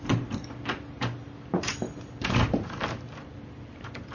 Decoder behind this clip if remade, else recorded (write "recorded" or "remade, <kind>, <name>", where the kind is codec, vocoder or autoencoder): remade, vocoder, BigVGAN v2